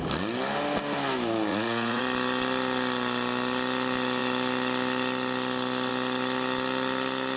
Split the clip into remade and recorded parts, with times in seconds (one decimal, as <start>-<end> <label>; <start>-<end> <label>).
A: 0.0-1.5 recorded; 1.5-2.0 remade; 2.0-7.4 recorded